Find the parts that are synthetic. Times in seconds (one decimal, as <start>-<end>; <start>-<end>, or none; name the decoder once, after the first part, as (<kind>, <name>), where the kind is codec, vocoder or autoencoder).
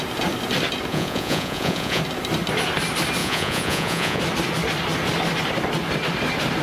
0.9-2.0 (vocoder, Vocos); 3.2-4.2